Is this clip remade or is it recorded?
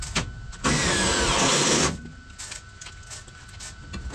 recorded